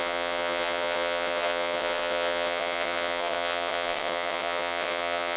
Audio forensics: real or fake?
fake